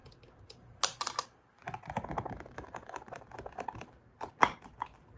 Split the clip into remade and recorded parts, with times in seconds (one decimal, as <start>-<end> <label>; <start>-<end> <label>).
0.0-5.2 recorded